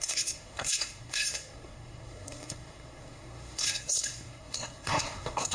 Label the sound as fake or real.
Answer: fake